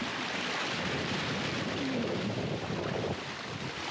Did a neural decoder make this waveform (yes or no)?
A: yes